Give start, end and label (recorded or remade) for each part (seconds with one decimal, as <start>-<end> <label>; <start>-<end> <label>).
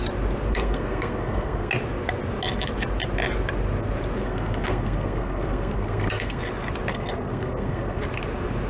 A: 0.0-0.5 recorded; 0.5-1.7 remade; 1.7-4.2 recorded; 4.2-6.4 remade; 6.4-6.9 recorded; 6.9-8.0 remade; 8.0-8.7 recorded